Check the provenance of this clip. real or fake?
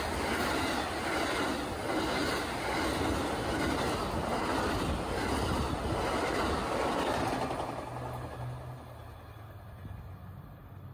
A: real